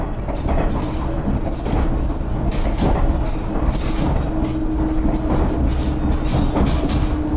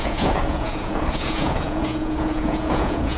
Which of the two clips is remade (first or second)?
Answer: second